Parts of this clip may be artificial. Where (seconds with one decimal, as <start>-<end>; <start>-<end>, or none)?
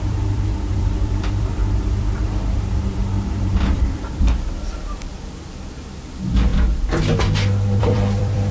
0.0-6.5; 7.8-8.5